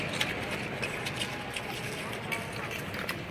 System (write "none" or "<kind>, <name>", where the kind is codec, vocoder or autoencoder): none